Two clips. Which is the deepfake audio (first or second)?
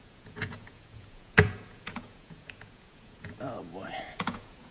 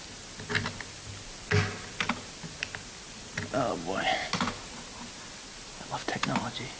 first